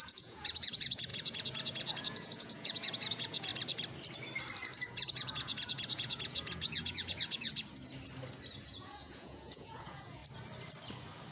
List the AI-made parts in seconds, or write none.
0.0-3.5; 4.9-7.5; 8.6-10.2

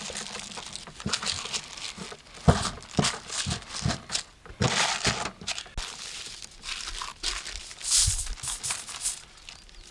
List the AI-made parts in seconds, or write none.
none

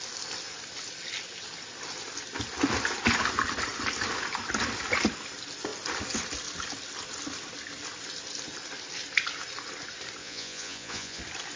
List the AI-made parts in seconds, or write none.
10.2-11.2

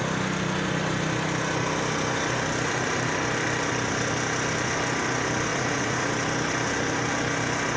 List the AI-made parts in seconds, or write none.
5.5-6.1

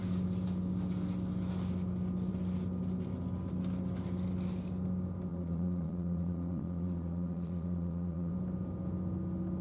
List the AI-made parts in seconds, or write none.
5.3-8.3